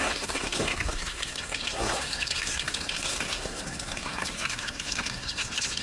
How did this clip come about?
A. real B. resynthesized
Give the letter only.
B